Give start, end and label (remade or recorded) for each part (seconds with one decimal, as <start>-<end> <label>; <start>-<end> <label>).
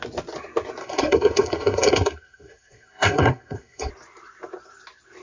0.0-0.8 recorded; 0.8-3.9 remade; 3.9-5.2 recorded